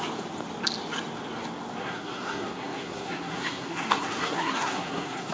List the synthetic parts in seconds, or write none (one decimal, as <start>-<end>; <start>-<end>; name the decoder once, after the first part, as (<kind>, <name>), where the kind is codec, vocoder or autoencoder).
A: 1.8-5.3 (codec, SNAC)

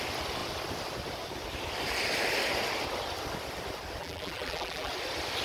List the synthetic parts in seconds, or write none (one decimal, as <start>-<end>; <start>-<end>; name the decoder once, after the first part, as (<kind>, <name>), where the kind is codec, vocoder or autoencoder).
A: 4.0-4.9 (vocoder, BigVGAN v2)

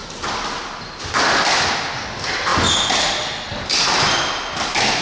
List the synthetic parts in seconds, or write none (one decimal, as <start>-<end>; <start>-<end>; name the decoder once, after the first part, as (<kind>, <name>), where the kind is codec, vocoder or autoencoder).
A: none

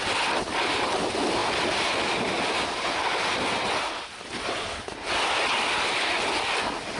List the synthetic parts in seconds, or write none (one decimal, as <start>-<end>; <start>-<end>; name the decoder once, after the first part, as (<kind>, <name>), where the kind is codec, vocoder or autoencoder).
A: none

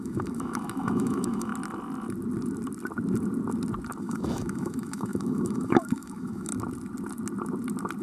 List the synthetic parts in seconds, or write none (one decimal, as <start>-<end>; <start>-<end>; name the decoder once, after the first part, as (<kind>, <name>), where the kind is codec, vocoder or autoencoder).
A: 0.0-1.5 (autoencoder, DAC-VAE); 4.0-6.5